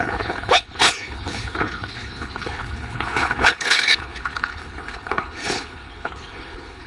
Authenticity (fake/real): fake